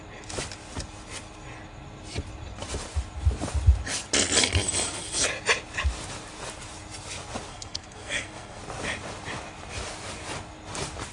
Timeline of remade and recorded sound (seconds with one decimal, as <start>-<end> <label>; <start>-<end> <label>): 0.0-7.5 recorded; 7.5-8.6 remade; 8.6-11.1 recorded